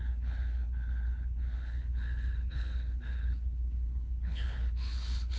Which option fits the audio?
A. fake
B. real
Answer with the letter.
A